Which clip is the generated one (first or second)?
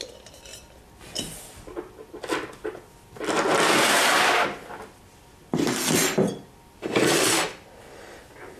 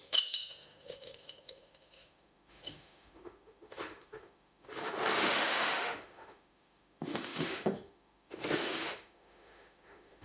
second